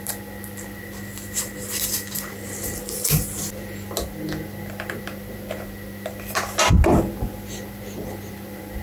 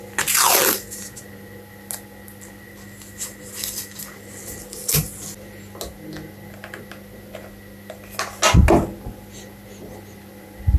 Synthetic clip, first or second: first